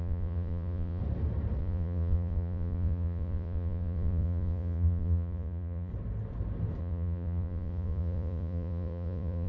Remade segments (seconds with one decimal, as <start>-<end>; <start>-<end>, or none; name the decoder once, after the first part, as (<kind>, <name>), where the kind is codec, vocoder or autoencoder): 0.0-1.0 (vocoder, Vocos); 1.6-5.9; 6.8-9.5